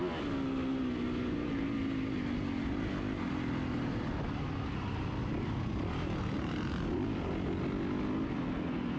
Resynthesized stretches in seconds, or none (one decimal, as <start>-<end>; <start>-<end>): none